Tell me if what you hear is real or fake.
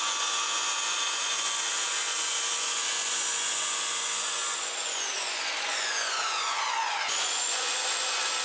fake